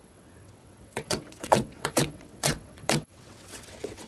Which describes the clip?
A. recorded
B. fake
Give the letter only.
B